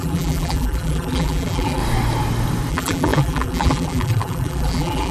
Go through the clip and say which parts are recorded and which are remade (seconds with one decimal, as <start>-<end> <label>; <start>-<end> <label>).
0.0-1.8 remade; 1.8-2.7 recorded; 2.7-5.1 remade

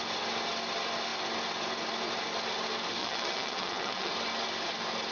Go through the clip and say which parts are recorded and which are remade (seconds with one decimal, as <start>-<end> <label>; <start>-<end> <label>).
0.0-3.0 recorded; 3.0-4.1 remade; 4.1-5.1 recorded